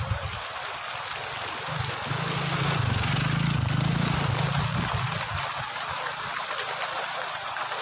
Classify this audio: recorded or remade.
recorded